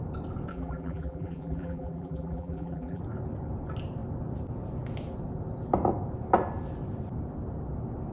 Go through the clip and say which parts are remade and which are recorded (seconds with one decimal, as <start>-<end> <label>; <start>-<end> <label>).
0.0-0.5 recorded; 0.5-3.0 remade; 3.0-8.1 recorded